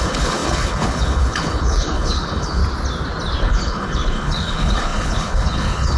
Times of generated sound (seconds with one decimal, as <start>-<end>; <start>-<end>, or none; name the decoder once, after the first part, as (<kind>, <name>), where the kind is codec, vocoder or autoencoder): 0.0-2.6 (codec, HILCodec); 3.4-6.0